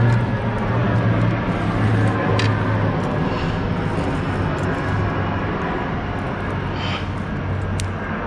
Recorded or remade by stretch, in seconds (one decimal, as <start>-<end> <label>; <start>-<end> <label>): 0.0-8.3 recorded